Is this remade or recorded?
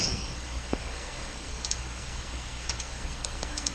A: remade